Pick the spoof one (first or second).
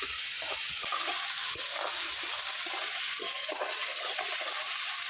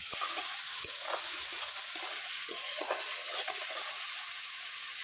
second